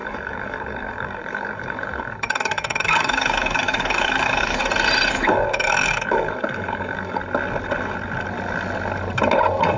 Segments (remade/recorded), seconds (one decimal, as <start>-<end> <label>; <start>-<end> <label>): 0.0-4.6 remade; 4.6-5.1 recorded; 5.1-7.2 remade; 7.2-9.8 recorded